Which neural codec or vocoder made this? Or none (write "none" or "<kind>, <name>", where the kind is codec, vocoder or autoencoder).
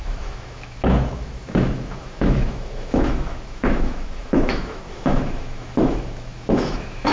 autoencoder, DAC-VAE